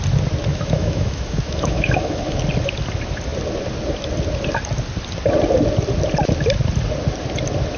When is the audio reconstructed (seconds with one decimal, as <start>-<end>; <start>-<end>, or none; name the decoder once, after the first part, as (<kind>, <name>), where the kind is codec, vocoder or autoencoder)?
0.5-2.4 (autoencoder, DAC-VAE)